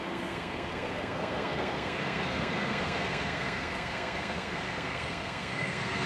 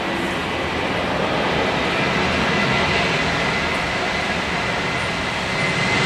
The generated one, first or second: first